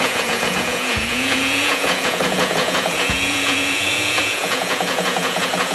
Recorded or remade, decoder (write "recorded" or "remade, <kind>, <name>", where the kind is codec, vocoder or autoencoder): remade, vocoder, Vocos